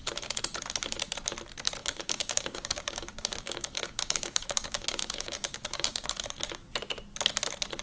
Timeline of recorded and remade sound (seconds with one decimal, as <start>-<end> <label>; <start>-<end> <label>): 0.0-1.8 recorded; 1.8-6.1 remade; 6.1-7.8 recorded